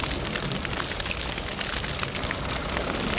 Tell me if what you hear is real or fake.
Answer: real